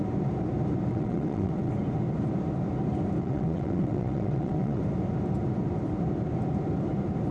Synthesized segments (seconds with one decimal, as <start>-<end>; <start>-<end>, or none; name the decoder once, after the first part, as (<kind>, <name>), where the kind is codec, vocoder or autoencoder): 0.9-1.7 (vocoder, WaveNeXt); 3.2-4.8